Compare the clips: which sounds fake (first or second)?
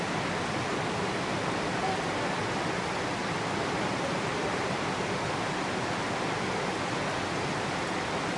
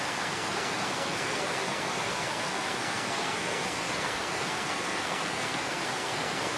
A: second